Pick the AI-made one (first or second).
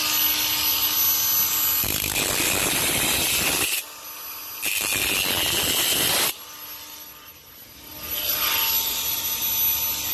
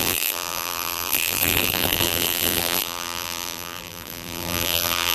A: second